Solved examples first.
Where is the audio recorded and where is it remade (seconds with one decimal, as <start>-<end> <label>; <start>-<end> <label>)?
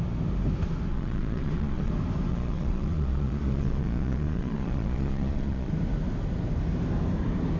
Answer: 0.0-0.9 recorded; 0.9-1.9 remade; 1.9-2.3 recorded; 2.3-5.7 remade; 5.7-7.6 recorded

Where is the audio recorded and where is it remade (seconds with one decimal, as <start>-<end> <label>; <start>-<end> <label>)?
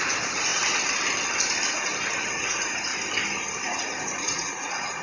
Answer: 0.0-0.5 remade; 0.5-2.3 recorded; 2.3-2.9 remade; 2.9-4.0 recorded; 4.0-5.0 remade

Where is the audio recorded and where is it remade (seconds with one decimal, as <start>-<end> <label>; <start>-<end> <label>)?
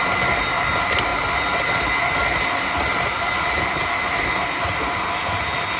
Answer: 0.0-5.8 recorded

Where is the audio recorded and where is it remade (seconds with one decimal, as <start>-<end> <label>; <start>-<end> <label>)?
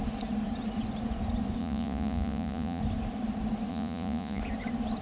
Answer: 0.0-1.6 recorded; 1.6-2.8 remade; 2.8-3.7 recorded; 3.7-4.4 remade; 4.4-5.0 recorded